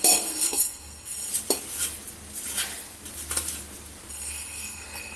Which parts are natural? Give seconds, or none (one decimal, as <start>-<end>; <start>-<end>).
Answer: 1.3-4.1